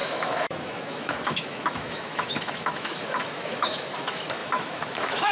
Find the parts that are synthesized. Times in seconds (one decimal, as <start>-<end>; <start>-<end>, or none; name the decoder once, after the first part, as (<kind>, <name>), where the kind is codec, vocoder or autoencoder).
0.0-5.3 (autoencoder, DAC-VAE)